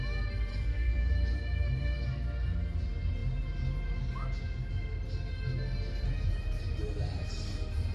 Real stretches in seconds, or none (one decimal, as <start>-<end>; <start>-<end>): 0.0-0.5; 1.1-7.9